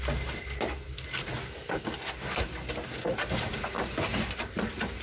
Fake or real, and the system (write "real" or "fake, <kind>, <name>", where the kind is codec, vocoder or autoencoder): real